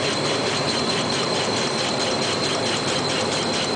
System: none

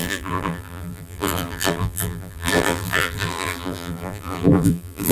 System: vocoder, BigVGAN v2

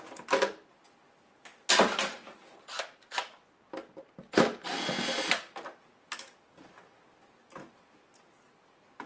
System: none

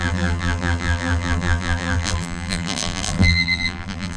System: vocoder, BigVGAN v2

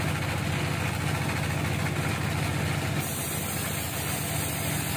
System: none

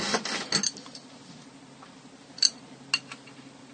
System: none